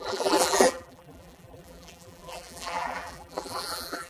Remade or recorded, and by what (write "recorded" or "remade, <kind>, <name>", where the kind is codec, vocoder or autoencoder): remade, vocoder, BigVGAN v2